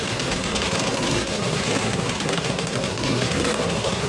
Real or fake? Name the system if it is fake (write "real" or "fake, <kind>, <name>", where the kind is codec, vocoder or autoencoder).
fake, codec, SNAC